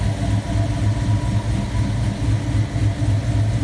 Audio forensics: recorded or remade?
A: recorded